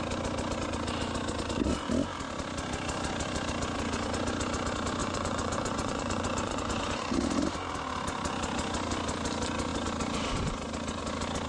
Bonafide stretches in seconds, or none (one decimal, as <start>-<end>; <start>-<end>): 0.0-5.0; 7.1-11.5